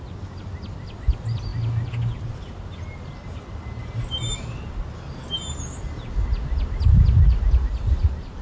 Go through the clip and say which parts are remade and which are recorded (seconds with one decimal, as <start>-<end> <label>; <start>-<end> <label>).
0.0-8.4 recorded